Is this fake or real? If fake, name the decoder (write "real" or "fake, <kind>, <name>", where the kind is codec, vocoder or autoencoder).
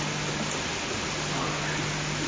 real